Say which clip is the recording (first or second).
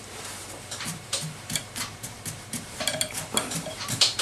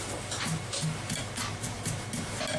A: second